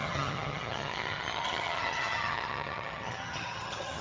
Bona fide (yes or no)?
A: no